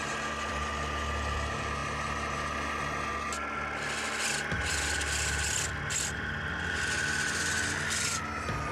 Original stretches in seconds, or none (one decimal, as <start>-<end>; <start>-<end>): 0.0-8.7